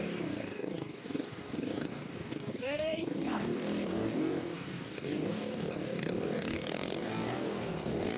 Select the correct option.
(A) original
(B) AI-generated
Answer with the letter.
B